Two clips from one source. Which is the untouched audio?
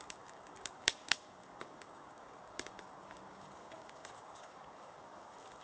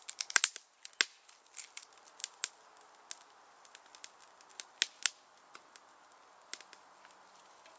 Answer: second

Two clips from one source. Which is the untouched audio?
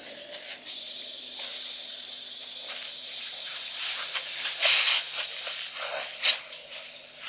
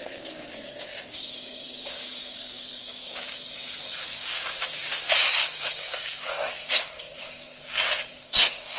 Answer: first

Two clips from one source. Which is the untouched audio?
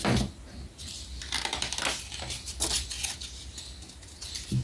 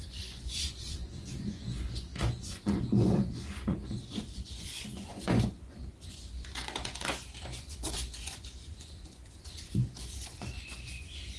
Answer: first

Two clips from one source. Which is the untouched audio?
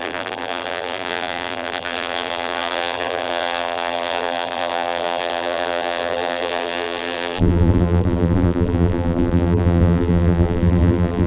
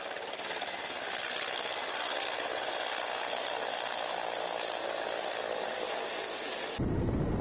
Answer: second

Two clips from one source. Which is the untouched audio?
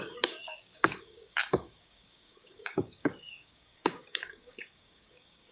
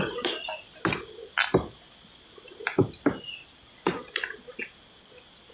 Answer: second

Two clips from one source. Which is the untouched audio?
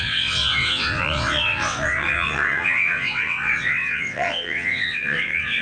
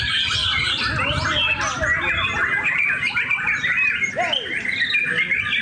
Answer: second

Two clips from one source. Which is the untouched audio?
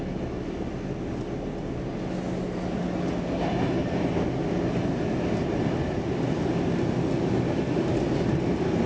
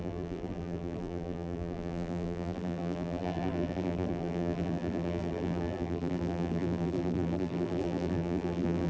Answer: first